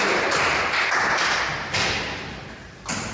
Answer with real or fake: real